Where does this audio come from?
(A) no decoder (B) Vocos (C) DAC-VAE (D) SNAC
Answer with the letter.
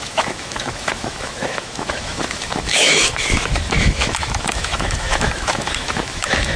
C